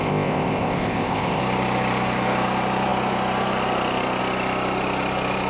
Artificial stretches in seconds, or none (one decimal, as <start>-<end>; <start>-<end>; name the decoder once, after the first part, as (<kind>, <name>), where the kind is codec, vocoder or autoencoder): 0.0-1.4 (codec, ZipCodec)